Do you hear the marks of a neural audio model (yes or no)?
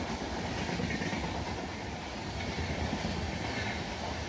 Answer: yes